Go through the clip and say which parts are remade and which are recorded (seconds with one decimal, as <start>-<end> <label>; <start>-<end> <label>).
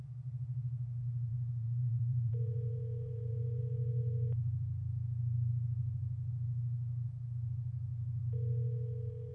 0.0-1.3 recorded; 1.3-3.6 remade; 3.6-9.3 recorded